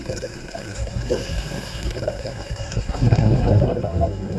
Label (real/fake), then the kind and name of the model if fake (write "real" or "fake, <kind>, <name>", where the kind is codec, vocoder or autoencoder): fake, codec, SNAC